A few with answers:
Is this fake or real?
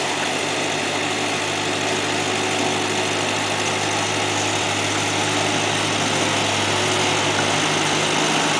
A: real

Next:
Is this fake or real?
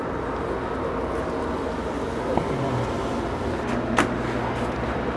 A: real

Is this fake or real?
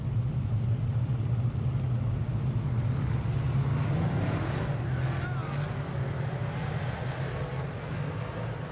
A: real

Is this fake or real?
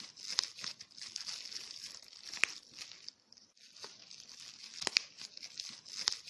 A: real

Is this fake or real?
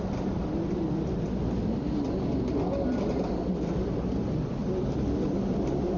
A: real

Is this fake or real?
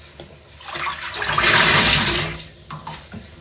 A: real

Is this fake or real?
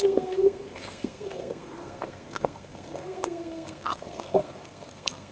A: fake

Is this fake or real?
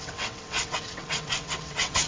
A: fake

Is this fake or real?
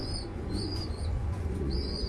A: fake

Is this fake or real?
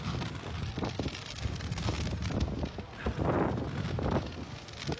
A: real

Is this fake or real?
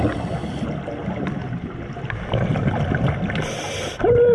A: real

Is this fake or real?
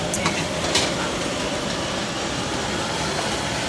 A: real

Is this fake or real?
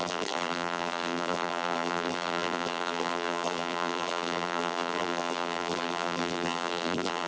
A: fake